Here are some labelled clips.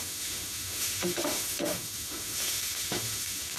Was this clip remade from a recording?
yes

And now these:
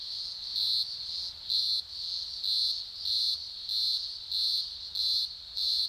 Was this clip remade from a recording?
no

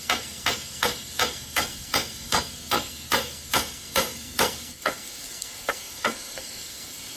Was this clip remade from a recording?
yes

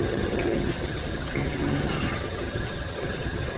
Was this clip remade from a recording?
yes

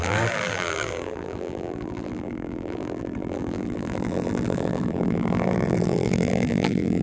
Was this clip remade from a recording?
yes